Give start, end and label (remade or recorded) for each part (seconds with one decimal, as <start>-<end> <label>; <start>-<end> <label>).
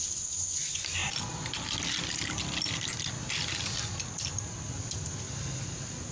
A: 0.0-6.1 recorded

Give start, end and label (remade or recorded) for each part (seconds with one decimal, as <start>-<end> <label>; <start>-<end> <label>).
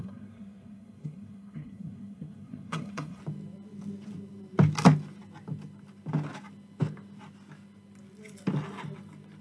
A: 0.0-3.2 remade; 3.2-9.4 recorded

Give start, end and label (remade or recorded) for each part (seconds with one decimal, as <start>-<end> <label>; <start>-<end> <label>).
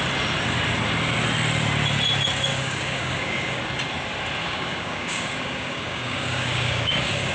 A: 0.0-2.5 recorded; 2.5-3.6 remade; 3.6-4.4 recorded; 4.4-7.3 remade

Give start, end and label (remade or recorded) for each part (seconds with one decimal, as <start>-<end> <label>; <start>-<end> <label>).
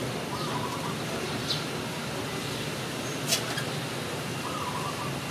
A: 0.0-3.2 remade; 3.2-5.3 recorded